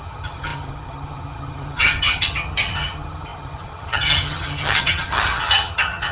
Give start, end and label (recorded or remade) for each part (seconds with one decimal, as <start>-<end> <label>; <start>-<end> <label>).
0.0-6.1 remade